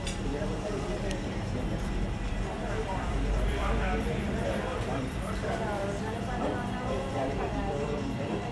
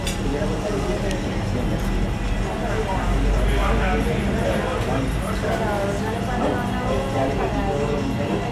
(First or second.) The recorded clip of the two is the second